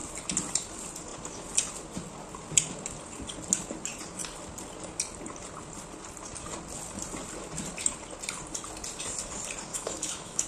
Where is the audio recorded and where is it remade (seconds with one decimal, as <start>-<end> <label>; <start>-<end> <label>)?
0.0-9.7 recorded; 9.7-10.5 remade